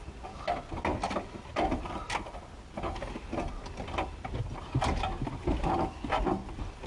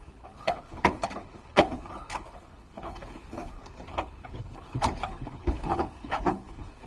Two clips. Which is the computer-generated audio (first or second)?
second